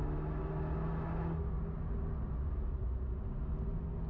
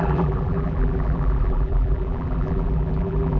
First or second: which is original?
first